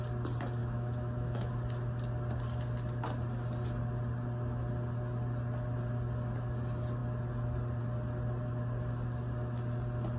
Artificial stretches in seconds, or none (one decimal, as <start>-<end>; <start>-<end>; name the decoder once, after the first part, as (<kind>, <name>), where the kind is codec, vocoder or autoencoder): 0.6-1.5 (autoencoder, DAC-VAE)